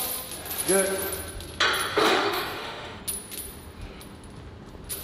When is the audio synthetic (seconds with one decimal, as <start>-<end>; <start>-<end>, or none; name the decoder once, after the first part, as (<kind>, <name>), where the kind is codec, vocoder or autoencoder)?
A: 1.9-3.0 (autoencoder, DAC-VAE)